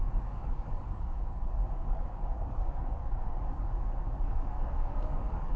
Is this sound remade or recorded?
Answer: remade